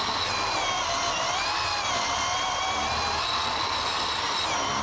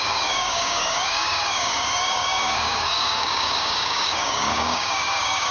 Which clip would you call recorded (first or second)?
first